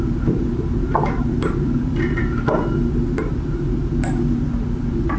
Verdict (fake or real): real